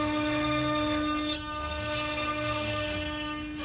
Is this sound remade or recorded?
recorded